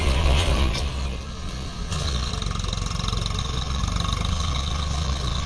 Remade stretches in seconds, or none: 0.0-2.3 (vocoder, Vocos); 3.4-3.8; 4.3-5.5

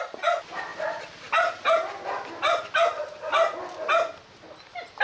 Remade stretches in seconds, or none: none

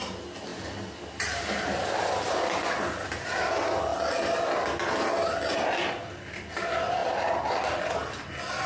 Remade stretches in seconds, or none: none

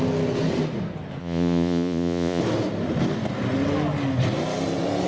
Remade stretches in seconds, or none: 1.2-2.4 (vocoder, Vocos)

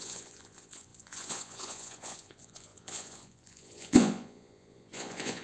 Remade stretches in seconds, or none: 0.0-5.4 (vocoder, Vocos)